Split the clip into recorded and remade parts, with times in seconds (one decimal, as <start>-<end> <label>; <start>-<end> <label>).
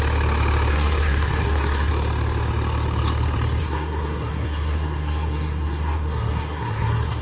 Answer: 0.0-0.7 recorded; 0.7-1.9 remade; 1.9-3.6 recorded; 3.6-7.2 remade